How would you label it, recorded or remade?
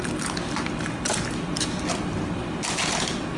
recorded